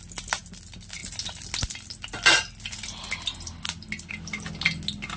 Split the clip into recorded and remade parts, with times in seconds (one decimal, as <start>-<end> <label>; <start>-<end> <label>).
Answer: 0.0-5.2 recorded